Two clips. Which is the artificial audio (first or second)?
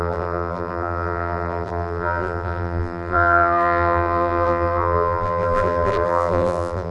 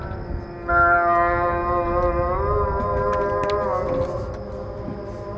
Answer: first